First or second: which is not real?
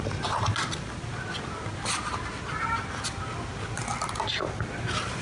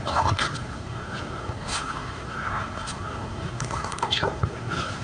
second